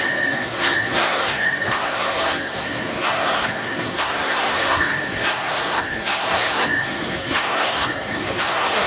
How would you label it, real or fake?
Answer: fake